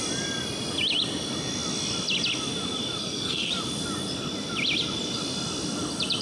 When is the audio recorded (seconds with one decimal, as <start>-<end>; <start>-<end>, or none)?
0.0-3.0; 3.5-6.2